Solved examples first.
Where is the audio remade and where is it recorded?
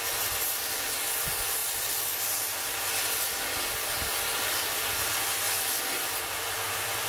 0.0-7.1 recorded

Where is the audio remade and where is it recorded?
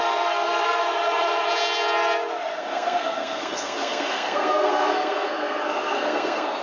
0.0-0.8 remade; 0.8-2.5 recorded; 2.5-6.6 remade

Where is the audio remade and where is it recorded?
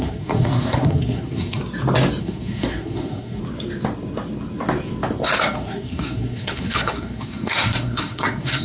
0.0-1.6 remade; 1.6-2.2 recorded; 2.2-3.4 remade; 3.4-5.4 recorded; 5.4-8.6 remade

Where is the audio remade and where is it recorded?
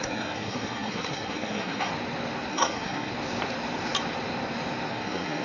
0.0-1.9 remade; 1.9-2.5 recorded; 2.5-3.1 remade; 3.1-4.9 recorded; 4.9-5.4 remade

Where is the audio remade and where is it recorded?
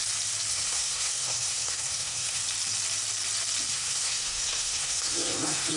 0.0-0.5 recorded; 0.5-2.4 remade; 2.4-3.7 recorded; 3.7-5.8 remade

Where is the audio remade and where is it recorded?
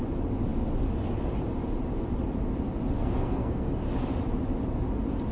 0.0-3.0 recorded; 3.0-3.7 remade; 3.7-5.3 recorded